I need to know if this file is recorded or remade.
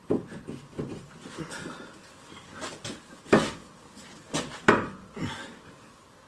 recorded